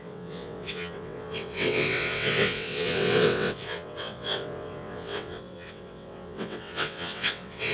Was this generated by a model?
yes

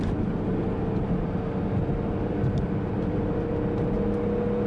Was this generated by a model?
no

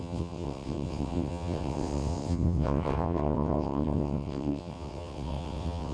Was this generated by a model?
yes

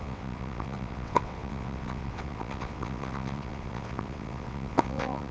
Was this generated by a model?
yes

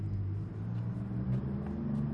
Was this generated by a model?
no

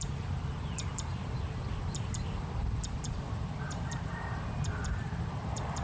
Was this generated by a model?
no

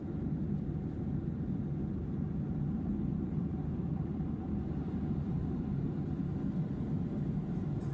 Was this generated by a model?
no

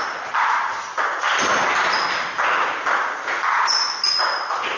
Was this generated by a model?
no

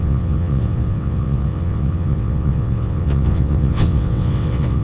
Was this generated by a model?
yes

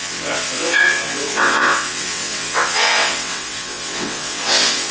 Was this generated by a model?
yes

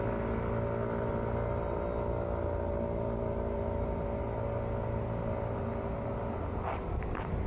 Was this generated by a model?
no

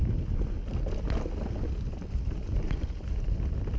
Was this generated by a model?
no